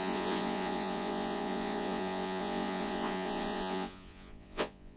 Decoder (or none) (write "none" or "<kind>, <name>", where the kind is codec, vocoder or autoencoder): vocoder, Vocos